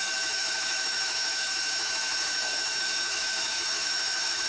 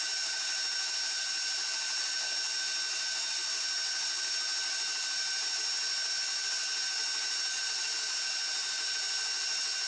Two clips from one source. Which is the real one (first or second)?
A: second